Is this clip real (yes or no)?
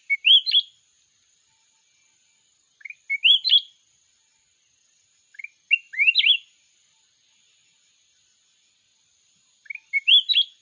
yes